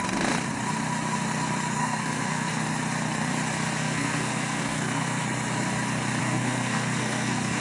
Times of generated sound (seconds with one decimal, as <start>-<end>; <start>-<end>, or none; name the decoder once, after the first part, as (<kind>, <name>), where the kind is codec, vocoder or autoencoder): 1.8-2.5 (codec, SNAC); 3.8-5.2; 6.2-7.6